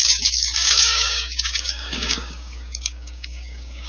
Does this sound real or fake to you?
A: fake